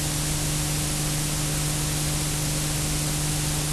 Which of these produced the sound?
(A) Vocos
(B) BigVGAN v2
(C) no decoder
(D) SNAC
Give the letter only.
C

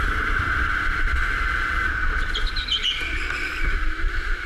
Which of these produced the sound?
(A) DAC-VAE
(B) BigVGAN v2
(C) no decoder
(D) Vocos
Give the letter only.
C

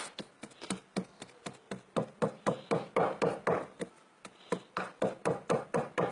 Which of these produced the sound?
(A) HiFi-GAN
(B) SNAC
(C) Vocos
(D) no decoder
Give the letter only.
D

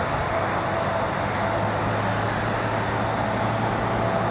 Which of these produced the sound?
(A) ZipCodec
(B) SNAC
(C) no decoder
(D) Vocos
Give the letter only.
C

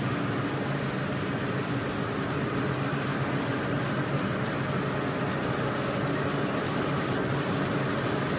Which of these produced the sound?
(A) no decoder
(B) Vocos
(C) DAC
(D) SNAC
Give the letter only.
A